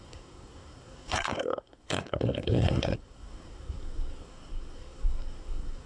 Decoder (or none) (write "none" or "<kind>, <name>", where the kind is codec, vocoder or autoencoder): codec, SNAC